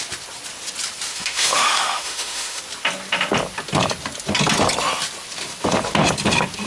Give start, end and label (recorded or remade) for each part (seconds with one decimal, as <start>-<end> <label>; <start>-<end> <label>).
0.0-1.1 recorded; 1.1-2.6 remade; 2.6-6.7 recorded